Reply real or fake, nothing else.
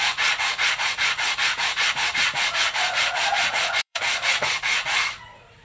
fake